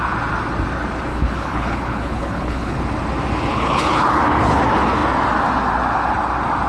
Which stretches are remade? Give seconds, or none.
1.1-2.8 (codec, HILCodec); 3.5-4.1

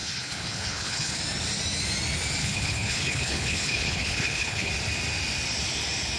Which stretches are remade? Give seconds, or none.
0.0-1.2 (codec, HILCodec); 2.4-4.7

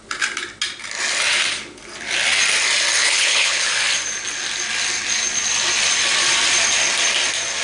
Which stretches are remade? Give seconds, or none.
3.0-3.7 (codec, HILCodec)

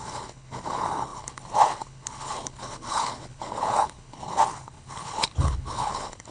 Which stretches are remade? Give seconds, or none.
0.0-6.3 (codec, HILCodec)

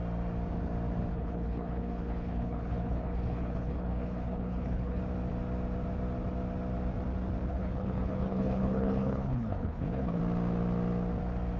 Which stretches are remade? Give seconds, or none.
1.1-5.0 (codec, HILCodec); 7.5-10.2